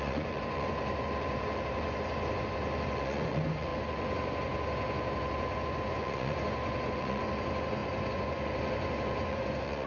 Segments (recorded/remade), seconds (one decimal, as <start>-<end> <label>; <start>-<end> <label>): 0.0-9.9 remade